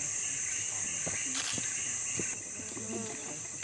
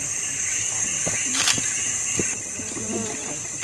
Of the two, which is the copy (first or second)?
second